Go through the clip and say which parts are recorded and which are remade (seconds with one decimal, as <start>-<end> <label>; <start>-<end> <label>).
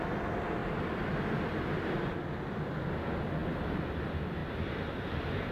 0.0-3.4 recorded; 3.4-3.9 remade; 3.9-4.4 recorded; 4.4-5.5 remade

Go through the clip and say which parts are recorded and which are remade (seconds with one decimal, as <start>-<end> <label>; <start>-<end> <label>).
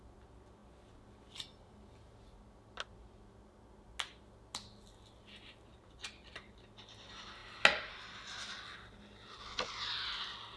0.0-5.7 recorded; 5.7-6.6 remade; 6.6-10.6 recorded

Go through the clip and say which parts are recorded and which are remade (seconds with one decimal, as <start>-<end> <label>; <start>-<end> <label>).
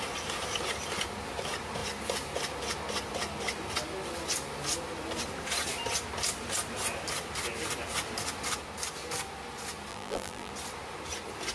0.0-9.9 recorded; 9.9-10.5 remade; 10.5-11.5 recorded